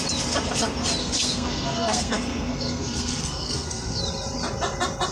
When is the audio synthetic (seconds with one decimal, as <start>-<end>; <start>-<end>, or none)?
1.0-4.0